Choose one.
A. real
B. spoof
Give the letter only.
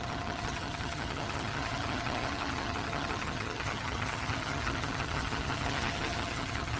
B